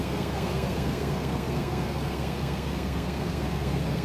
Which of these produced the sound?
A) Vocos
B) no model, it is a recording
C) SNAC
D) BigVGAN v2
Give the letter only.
C